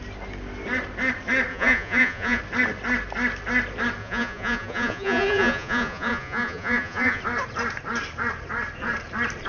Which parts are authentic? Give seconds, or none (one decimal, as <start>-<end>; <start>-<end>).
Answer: 0.0-1.5; 2.4-4.0; 7.2-9.5